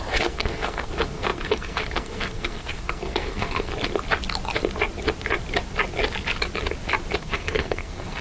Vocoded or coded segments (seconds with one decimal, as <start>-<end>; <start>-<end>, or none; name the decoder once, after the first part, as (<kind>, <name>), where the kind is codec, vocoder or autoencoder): 0.0-3.7 (codec, SNAC); 7.2-8.2